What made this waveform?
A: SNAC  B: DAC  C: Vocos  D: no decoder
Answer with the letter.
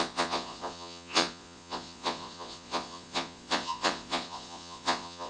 C